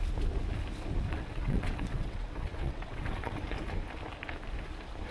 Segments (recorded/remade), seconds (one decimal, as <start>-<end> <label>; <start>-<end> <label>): 0.0-1.1 recorded; 1.1-3.4 remade; 3.4-5.1 recorded